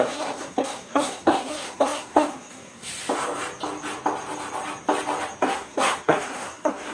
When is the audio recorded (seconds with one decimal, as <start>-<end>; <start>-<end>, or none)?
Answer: 2.9-5.4